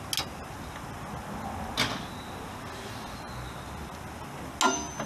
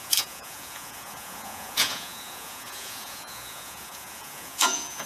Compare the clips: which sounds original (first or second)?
first